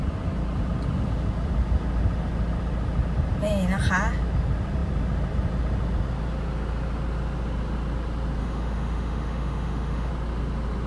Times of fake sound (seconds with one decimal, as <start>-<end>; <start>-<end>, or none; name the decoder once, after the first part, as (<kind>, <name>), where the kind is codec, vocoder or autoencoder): 8.4-10.1 (autoencoder, DAC-VAE)